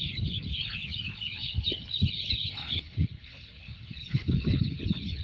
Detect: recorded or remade remade